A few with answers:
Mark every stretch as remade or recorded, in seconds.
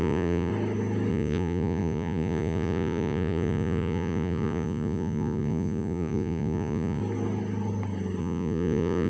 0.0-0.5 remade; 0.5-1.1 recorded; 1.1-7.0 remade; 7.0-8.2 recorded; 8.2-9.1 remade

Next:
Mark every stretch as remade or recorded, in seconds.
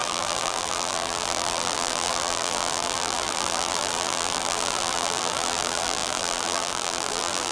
0.0-7.5 remade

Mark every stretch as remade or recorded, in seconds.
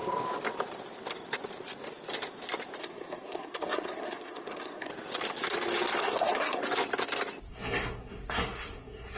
0.0-2.8 recorded; 2.8-4.9 remade; 4.9-6.0 recorded; 6.0-6.6 remade; 6.6-7.5 recorded; 7.5-9.2 remade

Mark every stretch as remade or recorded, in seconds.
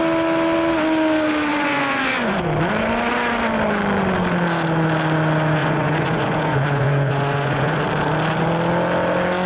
0.0-1.5 recorded; 1.5-2.4 remade; 2.4-5.6 recorded; 5.6-7.8 remade; 7.8-9.5 recorded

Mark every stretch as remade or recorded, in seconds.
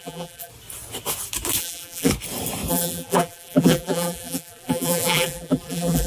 0.0-0.5 remade; 0.5-1.6 recorded; 1.6-2.1 remade; 2.1-2.7 recorded; 2.7-6.1 remade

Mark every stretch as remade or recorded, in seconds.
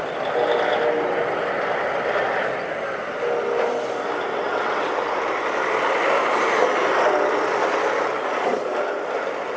0.0-4.3 recorded; 4.3-4.9 remade; 4.9-9.6 recorded